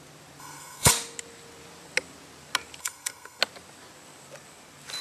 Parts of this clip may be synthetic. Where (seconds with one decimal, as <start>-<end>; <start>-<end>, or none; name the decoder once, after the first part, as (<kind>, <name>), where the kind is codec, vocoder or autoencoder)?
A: 0.4-0.9 (codec, SNAC); 2.8-3.4